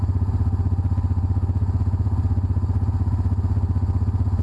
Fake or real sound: real